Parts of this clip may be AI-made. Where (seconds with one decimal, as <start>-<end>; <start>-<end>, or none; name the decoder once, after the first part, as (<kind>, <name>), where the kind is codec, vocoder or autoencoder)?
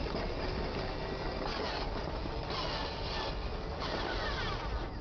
0.0-1.3 (vocoder, BigVGAN v2); 3.7-5.0